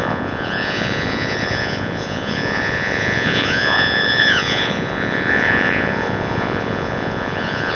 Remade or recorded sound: remade